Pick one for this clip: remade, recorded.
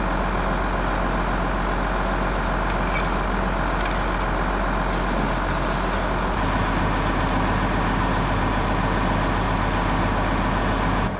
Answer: recorded